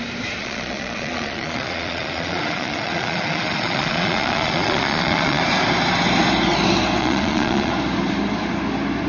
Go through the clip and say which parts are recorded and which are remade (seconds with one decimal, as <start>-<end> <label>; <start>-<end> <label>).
0.0-0.4 recorded; 0.4-5.4 remade; 5.4-7.0 recorded; 7.0-7.7 remade; 7.7-9.1 recorded